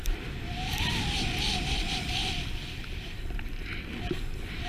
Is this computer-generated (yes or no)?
no